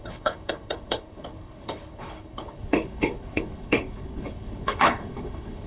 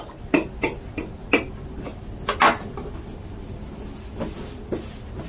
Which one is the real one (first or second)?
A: second